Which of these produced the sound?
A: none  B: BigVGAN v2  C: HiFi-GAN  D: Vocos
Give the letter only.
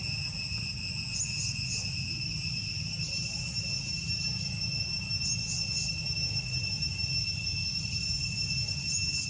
A